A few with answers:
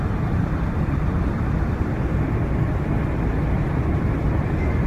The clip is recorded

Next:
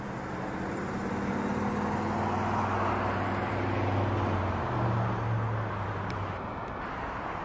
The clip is recorded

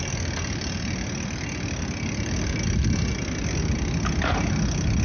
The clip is recorded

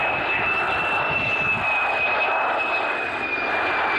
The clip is recorded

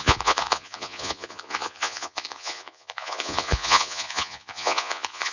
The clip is remade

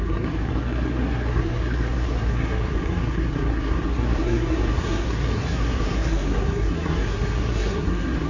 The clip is remade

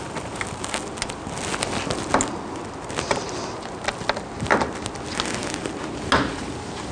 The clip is recorded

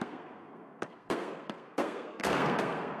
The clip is remade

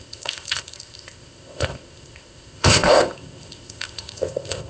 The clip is remade